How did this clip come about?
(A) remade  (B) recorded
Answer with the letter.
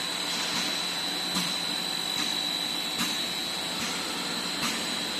B